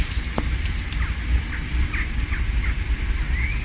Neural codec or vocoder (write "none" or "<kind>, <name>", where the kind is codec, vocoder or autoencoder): none